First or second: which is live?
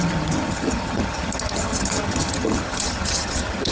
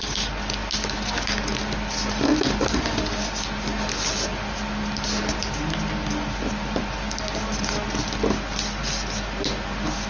second